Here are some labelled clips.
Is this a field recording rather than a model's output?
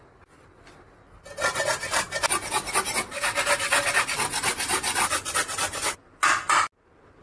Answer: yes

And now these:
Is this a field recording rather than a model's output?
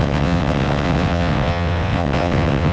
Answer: no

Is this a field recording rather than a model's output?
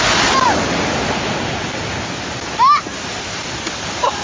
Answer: yes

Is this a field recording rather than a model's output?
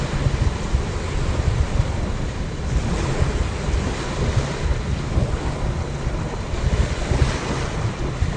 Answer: yes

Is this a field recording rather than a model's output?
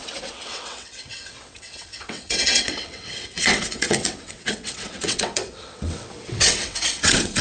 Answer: no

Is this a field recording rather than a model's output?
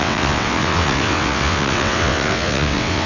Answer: no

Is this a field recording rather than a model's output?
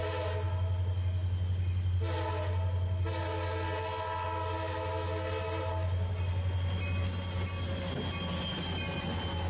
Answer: yes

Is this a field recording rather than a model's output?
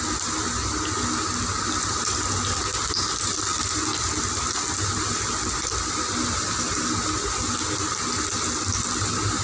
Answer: yes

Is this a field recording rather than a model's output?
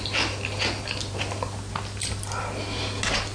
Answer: yes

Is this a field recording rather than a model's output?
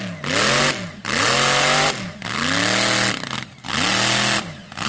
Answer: yes